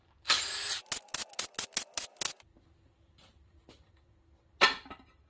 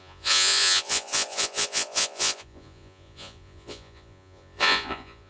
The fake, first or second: second